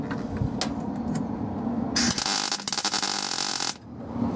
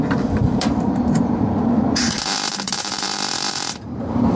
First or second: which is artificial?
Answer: second